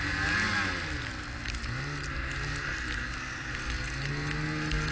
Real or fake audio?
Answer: real